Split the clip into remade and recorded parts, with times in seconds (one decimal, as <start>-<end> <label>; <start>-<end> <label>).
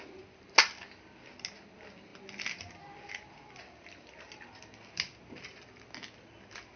0.0-6.8 recorded